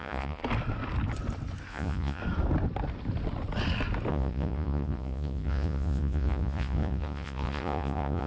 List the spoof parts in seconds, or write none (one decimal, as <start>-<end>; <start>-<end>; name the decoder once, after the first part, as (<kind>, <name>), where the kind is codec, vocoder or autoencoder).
0.0-0.4 (vocoder, Vocos); 1.7-2.2; 4.1-8.3